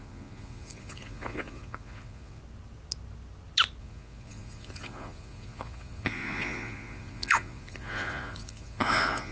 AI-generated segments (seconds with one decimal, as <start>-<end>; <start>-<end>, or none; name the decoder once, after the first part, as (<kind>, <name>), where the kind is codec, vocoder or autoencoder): 0.0-2.4 (vocoder, Vocos); 3.8-9.3